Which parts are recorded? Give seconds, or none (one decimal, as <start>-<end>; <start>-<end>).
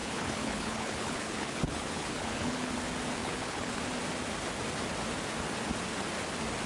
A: 2.7-3.2; 3.8-6.7